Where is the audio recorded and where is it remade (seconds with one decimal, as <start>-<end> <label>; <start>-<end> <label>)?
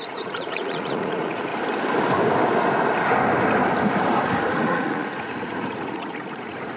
0.0-1.5 remade; 1.5-4.5 recorded; 4.5-6.8 remade